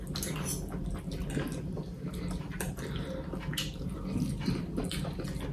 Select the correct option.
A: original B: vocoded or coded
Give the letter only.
A